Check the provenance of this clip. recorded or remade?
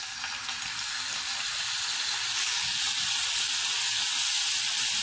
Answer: recorded